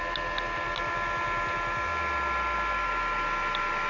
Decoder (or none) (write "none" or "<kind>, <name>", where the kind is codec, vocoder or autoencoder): none